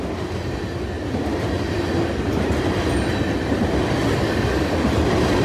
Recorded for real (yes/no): yes